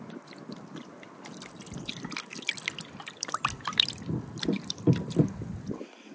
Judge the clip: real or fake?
real